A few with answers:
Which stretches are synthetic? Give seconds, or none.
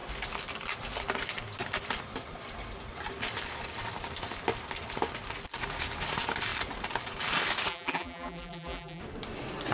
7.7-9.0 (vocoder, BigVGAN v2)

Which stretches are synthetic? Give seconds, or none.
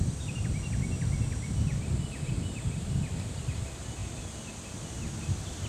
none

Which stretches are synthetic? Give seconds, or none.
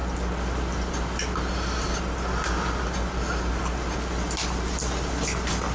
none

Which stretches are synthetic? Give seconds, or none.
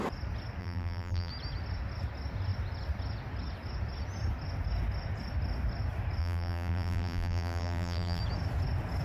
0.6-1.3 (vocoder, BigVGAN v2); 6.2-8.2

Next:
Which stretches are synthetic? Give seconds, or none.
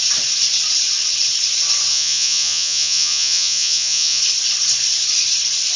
1.9-4.2 (vocoder, Vocos)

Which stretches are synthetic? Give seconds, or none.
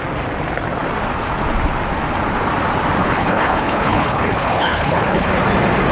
3.0-5.3 (codec, HILCodec)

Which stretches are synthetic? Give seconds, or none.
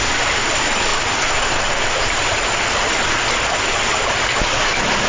none